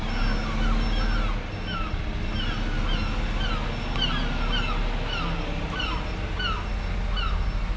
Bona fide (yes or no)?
yes